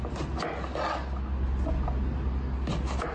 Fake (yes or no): no